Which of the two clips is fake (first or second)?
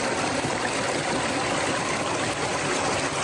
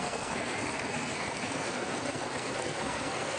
second